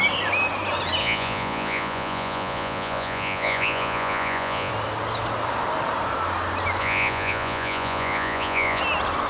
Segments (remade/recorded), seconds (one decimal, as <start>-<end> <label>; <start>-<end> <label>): 0.0-1.0 recorded; 1.0-4.7 remade; 4.7-6.8 recorded; 6.8-8.8 remade; 8.8-9.3 recorded